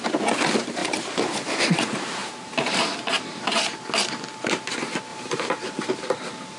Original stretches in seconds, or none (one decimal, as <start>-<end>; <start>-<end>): 0.0-0.8; 1.3-2.2; 4.1-5.1; 5.9-6.6